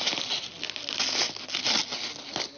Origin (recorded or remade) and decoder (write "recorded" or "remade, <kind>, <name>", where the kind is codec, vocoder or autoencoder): recorded